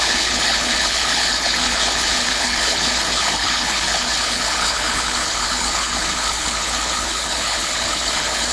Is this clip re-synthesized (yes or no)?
yes